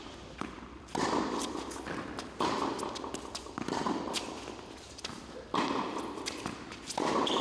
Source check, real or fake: fake